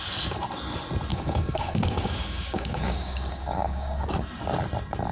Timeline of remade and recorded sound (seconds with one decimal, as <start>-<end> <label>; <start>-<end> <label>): 0.0-1.1 recorded; 1.1-4.2 remade; 4.2-5.1 recorded